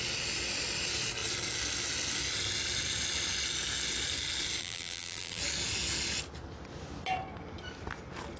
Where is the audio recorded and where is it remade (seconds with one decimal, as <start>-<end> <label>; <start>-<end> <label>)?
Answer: 0.0-4.6 recorded; 4.6-5.4 remade; 5.4-8.4 recorded